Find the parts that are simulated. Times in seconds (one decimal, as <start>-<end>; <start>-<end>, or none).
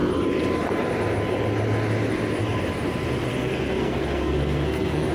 3.3-5.1